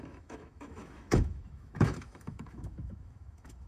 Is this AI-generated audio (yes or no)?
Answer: yes